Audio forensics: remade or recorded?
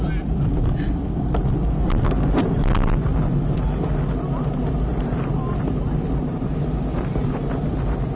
recorded